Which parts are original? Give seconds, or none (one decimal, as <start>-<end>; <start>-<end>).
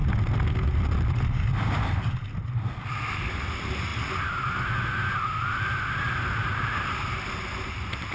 0.0-8.1